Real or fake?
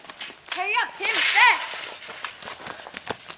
real